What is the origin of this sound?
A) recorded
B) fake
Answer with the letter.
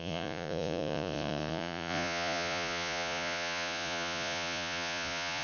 B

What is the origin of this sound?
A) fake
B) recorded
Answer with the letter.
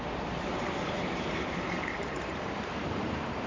A